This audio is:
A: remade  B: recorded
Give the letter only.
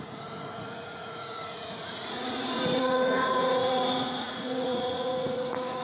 A